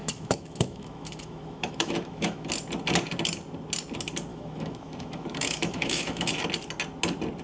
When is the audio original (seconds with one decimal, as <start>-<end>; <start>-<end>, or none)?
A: 2.5-4.3; 6.4-7.4